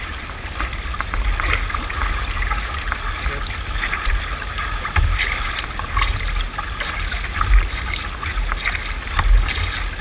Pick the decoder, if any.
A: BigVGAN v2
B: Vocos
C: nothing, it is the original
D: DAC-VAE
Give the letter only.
C